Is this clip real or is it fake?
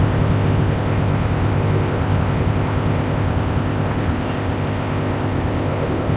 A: fake